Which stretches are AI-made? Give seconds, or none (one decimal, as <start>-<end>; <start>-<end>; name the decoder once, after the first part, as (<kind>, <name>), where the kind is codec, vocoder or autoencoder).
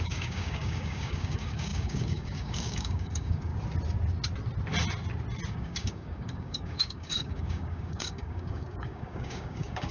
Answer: 0.0-3.5 (codec, DAC); 5.5-9.9